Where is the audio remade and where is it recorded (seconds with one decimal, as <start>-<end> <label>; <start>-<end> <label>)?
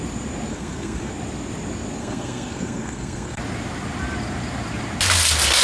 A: 0.0-0.5 recorded; 0.5-1.1 remade; 1.1-2.0 recorded; 2.0-3.4 remade; 3.4-5.6 recorded